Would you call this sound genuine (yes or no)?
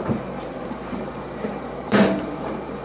no